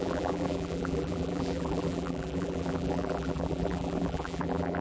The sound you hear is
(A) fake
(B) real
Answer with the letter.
A